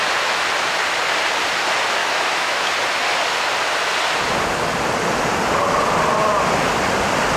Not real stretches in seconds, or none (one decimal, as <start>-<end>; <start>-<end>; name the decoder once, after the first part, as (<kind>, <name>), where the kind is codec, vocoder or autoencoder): 2.0-2.7 (autoencoder, DAC-VAE)